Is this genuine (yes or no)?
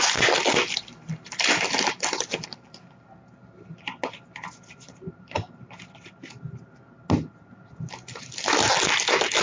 yes